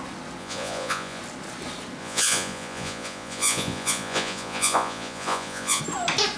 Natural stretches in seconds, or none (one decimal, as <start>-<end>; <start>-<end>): 0.0-0.4; 1.2-2.0; 5.8-6.4